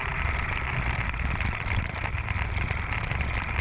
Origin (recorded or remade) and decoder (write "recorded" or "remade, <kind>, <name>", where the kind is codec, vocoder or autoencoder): recorded